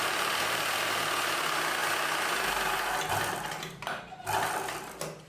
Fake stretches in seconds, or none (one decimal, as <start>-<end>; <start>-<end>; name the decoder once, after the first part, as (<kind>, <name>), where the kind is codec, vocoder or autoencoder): none